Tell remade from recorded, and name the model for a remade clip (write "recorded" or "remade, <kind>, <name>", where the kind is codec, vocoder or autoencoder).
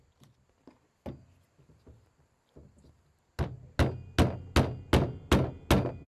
recorded